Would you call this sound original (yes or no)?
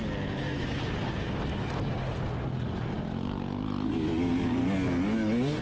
yes